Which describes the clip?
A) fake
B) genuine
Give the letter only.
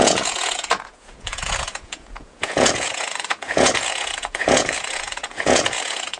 A